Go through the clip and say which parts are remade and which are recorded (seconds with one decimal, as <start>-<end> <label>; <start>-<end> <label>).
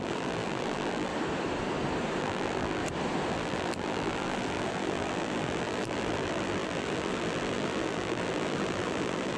0.0-1.1 remade; 1.1-2.2 recorded; 2.2-2.8 remade; 2.8-3.3 recorded; 3.3-9.4 remade